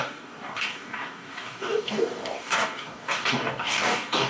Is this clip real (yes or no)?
no